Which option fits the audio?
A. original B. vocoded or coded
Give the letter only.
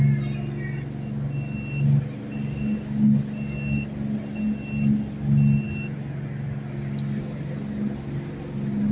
A